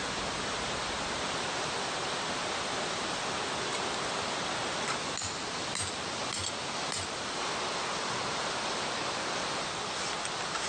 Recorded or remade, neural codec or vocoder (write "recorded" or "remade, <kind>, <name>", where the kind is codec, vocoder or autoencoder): recorded